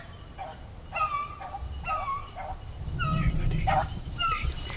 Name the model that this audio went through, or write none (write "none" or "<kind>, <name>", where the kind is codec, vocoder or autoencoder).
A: none